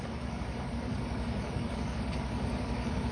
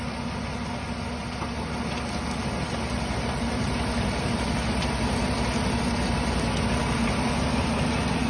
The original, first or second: second